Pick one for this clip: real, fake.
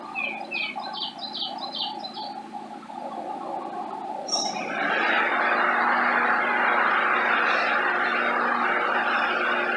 real